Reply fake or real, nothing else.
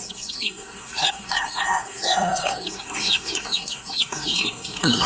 fake